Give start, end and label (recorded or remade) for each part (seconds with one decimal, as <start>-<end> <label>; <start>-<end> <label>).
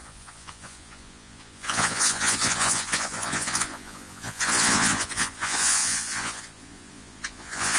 0.0-7.8 remade